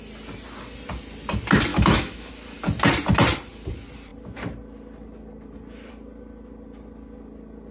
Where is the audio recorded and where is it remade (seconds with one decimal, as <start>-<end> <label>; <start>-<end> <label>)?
0.0-1.7 recorded; 1.7-2.3 remade; 2.3-7.7 recorded